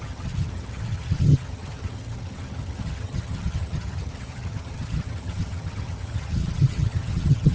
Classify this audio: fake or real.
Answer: fake